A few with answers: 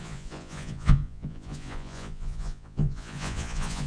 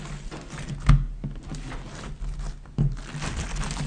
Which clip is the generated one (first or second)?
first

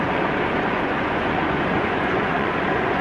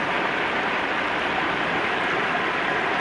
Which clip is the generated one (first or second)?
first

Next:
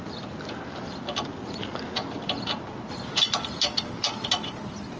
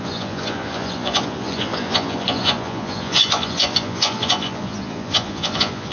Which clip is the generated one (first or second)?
second